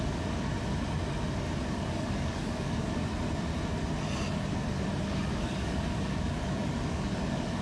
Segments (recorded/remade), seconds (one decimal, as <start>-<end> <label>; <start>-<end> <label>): 0.0-0.5 remade; 0.5-1.7 recorded; 1.7-3.0 remade; 3.0-5.0 recorded; 5.0-7.6 remade